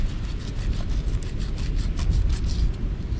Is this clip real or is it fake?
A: real